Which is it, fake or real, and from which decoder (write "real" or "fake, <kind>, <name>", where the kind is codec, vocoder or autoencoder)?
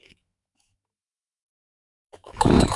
fake, autoencoder, DAC-VAE